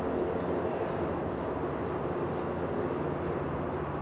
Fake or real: real